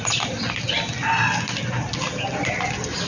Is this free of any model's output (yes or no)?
yes